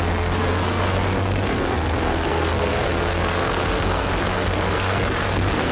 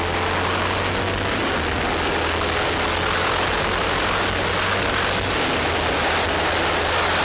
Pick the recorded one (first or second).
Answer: second